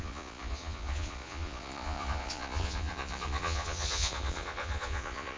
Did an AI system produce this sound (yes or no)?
yes